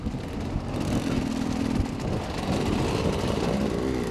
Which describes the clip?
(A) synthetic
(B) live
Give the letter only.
B